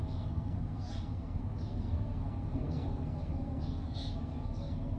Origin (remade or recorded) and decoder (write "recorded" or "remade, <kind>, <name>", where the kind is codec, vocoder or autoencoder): remade, codec, SNAC